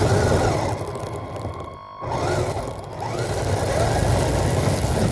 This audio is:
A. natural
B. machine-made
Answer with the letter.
A